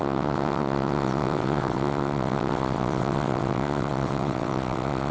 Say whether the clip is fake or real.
fake